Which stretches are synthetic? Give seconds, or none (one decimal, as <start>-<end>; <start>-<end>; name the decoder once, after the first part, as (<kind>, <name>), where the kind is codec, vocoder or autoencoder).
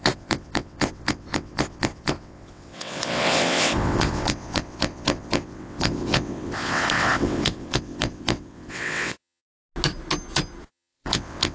0.0-9.4 (vocoder, WaveNeXt); 10.7-11.5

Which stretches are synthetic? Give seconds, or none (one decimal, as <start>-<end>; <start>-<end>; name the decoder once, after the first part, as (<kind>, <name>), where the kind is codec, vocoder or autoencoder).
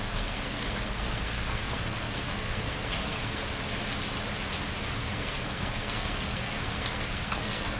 0.0-3.4 (codec, SNAC); 5.0-7.8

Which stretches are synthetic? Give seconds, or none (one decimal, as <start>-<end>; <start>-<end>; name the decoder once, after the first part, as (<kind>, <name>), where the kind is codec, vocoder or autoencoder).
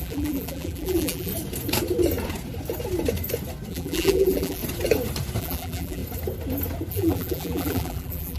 0.0-1.3 (vocoder, BigVGAN v2); 3.7-4.6; 5.4-6.0; 6.9-8.4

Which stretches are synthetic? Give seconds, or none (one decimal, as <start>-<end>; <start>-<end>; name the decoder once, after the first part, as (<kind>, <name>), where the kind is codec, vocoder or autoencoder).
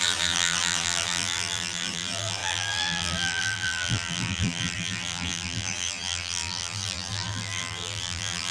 0.0-8.5 (vocoder, BigVGAN v2)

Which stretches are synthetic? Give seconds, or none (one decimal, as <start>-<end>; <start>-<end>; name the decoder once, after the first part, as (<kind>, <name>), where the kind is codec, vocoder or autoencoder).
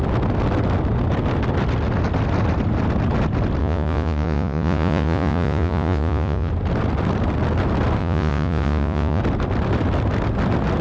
3.6-6.5 (vocoder, Vocos); 8.0-9.2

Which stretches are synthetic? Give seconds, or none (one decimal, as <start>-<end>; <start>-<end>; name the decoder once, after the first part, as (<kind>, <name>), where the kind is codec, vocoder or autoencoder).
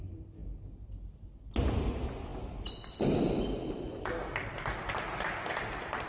none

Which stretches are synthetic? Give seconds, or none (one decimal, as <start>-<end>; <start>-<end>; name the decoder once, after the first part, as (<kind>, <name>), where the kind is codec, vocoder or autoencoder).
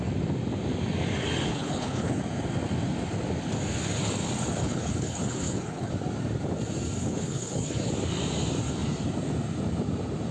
1.5-2.2 (codec, HILCodec); 4.6-5.9; 7.0-7.9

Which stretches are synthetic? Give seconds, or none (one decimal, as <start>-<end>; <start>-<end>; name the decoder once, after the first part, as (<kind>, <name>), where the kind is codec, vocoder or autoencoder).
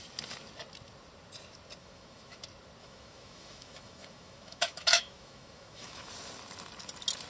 1.8-2.4 (autoencoder, DAC-VAE); 2.8-6.1